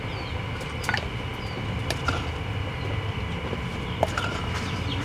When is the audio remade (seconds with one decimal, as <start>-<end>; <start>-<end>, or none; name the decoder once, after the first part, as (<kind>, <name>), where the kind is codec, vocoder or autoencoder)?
1.3-4.2 (vocoder, BigVGAN v2)